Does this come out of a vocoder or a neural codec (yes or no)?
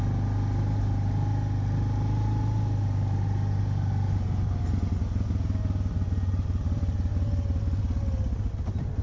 no